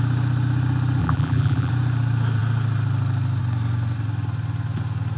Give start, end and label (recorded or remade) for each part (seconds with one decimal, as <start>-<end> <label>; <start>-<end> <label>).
0.0-1.0 recorded; 1.0-1.7 remade; 1.7-5.2 recorded